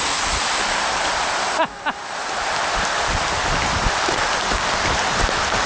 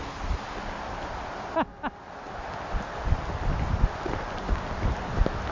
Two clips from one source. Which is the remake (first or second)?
first